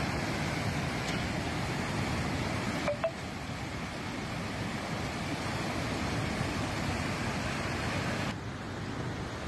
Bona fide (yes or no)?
yes